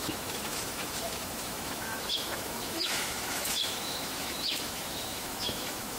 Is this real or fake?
fake